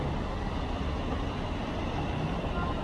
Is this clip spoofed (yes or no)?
no